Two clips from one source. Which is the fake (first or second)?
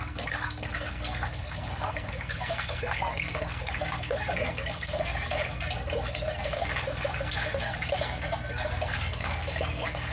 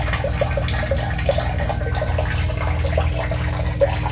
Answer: first